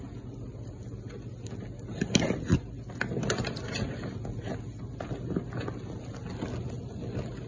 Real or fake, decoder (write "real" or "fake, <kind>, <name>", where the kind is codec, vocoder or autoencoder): real